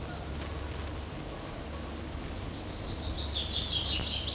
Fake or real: real